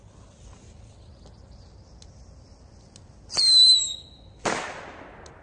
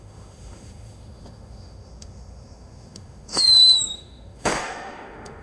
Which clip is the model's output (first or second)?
second